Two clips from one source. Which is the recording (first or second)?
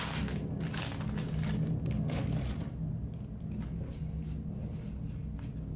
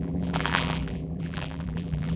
first